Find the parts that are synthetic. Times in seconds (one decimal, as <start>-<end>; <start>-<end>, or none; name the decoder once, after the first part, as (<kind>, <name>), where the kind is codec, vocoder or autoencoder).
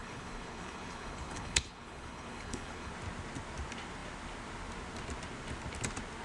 0.0-2.9 (codec, HILCodec)